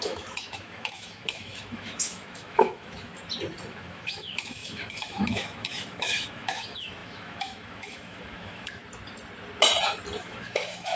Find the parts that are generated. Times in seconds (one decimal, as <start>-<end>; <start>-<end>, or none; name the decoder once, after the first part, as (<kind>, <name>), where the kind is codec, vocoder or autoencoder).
0.0-3.1 (autoencoder, DAC-VAE); 3.7-8.8; 10.2-11.0